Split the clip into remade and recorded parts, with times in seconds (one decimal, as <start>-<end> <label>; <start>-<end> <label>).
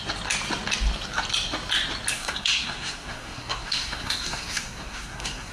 0.0-2.1 recorded; 2.1-5.5 remade